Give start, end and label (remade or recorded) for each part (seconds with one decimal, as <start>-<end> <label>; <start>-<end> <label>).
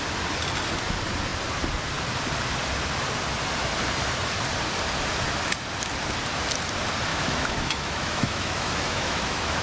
0.0-7.1 recorded; 7.1-9.6 remade